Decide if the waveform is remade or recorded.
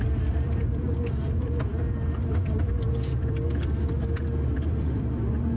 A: remade